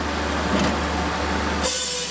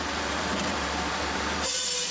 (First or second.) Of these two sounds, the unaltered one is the first